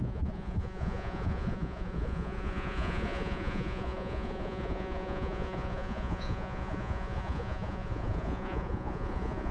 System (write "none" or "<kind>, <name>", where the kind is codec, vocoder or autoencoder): vocoder, Vocos